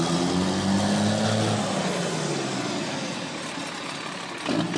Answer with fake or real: real